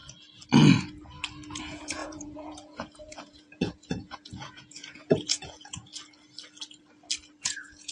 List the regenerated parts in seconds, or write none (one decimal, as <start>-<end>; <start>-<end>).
1.6-5.9; 7.4-7.9